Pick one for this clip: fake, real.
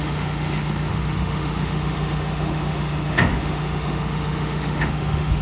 fake